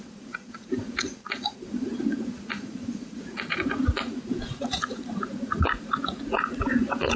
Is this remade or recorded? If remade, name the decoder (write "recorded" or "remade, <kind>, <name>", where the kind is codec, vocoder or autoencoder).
remade, vocoder, Vocos